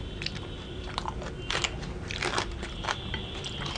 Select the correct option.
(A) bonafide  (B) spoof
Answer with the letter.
A